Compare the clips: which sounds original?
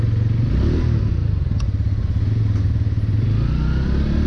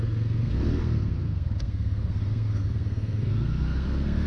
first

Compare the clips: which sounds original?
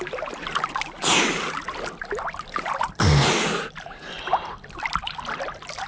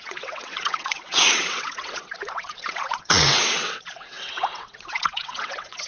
first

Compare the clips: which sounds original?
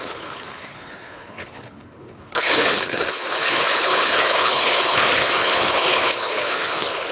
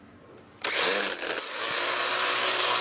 second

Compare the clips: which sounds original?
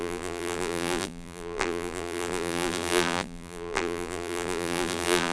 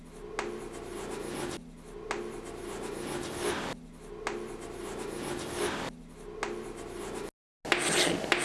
second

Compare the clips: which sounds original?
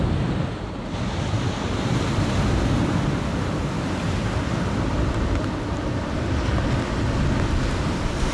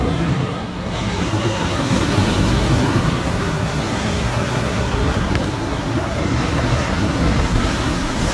first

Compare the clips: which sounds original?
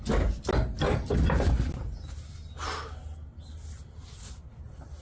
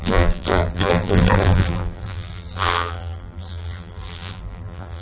first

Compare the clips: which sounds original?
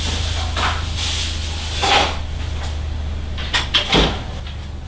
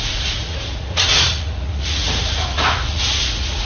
first